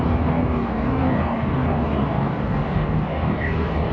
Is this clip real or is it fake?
fake